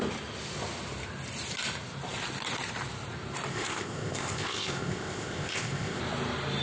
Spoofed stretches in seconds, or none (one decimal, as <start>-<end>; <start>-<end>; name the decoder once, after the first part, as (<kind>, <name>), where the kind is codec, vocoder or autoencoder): 3.5-6.0 (codec, ZipCodec)